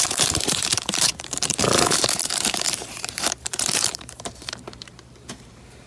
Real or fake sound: fake